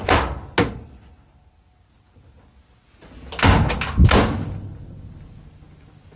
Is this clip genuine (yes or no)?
yes